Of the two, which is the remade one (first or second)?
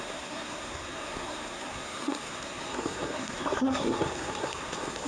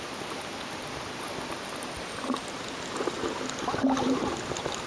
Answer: first